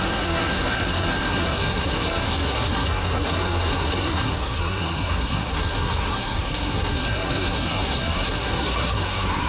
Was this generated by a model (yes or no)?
yes